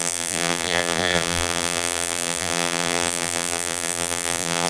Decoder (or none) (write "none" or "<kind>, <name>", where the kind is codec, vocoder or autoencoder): vocoder, BigVGAN v2